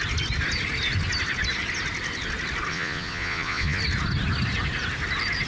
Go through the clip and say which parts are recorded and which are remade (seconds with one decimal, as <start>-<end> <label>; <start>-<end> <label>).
0.0-2.7 recorded; 2.7-3.8 remade; 3.8-5.5 recorded